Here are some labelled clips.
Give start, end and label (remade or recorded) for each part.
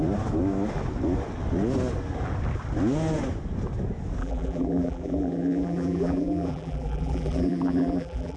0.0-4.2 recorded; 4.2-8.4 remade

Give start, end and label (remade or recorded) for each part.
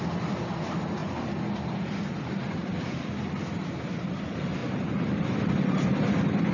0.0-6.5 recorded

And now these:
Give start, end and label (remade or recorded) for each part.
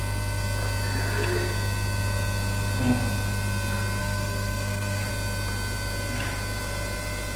0.0-4.0 recorded; 4.0-5.1 remade; 5.1-7.4 recorded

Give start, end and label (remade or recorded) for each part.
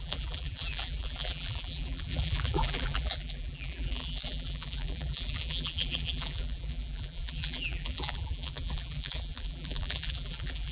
0.0-10.7 remade